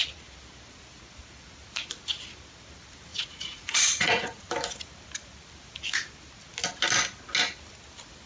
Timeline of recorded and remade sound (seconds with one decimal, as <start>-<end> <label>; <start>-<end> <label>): 0.0-3.1 recorded; 3.1-4.5 remade; 4.5-8.3 recorded